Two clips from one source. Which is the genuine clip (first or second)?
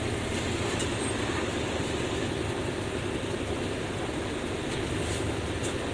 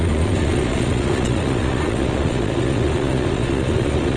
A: first